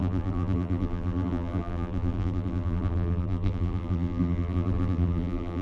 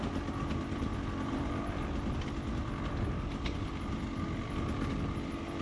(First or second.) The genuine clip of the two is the second